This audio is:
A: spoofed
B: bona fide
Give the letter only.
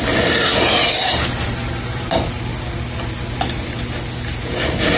B